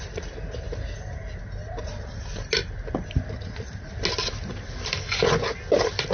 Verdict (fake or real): real